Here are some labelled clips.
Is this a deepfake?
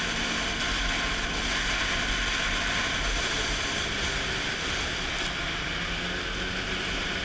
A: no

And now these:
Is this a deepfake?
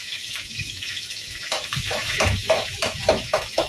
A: yes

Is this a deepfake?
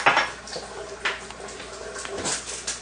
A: no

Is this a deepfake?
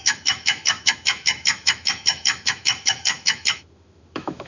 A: yes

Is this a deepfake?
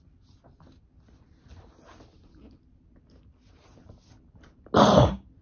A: no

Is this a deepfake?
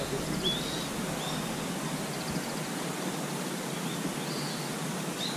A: no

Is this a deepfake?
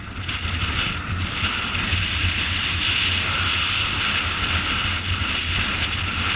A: no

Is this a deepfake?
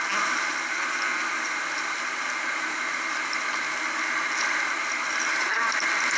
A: no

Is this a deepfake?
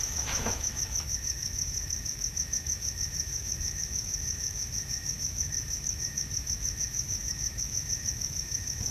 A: yes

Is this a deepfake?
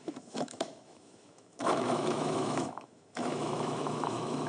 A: yes